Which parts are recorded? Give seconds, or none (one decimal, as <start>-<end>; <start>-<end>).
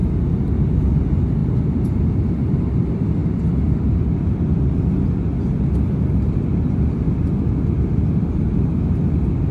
0.0-3.2; 4.8-9.5